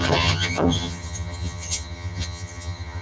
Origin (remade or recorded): remade